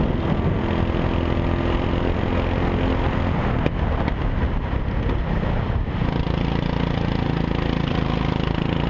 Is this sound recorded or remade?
recorded